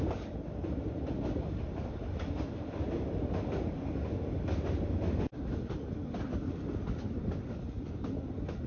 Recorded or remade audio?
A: recorded